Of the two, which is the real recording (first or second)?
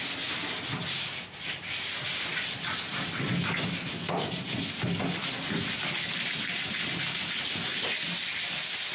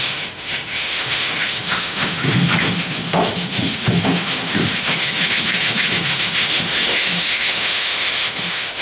first